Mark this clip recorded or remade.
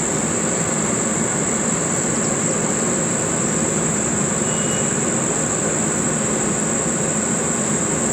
recorded